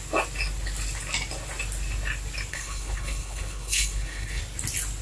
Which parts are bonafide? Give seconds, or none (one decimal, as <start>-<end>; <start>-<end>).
0.0-2.5; 4.4-5.0